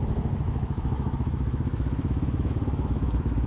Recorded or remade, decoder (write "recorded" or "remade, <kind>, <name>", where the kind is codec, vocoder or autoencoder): remade, autoencoder, DAC-VAE